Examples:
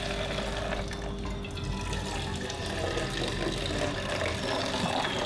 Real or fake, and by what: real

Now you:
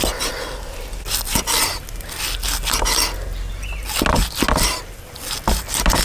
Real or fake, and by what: real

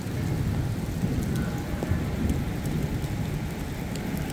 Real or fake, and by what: real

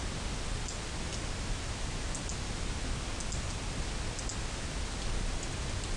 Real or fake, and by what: real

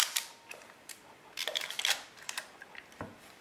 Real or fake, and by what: real